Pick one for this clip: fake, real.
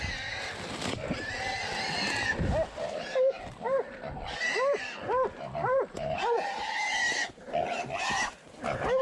real